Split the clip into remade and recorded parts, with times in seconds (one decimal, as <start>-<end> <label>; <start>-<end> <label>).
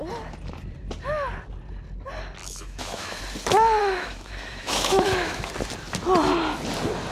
0.0-2.4 recorded; 2.4-3.2 remade; 3.2-3.8 recorded; 3.8-5.5 remade; 5.5-7.1 recorded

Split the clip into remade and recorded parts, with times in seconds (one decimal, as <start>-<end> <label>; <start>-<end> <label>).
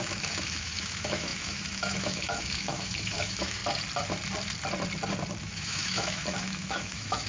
0.0-3.6 remade; 3.6-5.4 recorded; 5.4-7.3 remade